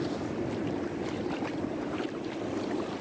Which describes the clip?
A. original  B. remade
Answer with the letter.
A